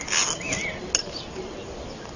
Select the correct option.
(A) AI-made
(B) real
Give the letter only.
B